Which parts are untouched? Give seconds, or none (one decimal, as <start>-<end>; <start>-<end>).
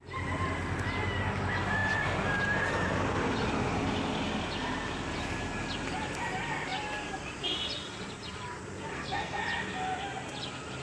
0.0-8.9; 9.4-10.8